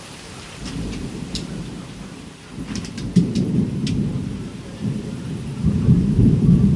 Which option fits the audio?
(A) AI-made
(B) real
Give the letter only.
A